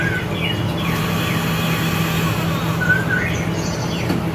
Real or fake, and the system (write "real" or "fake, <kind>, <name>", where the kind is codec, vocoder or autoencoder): real